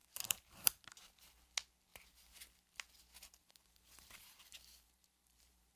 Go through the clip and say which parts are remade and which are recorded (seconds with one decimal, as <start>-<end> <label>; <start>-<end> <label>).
0.0-0.9 remade; 0.9-3.4 recorded; 3.4-5.8 remade